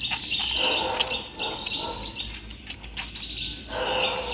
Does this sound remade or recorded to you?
recorded